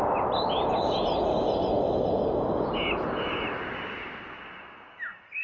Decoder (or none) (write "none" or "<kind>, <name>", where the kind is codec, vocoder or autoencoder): none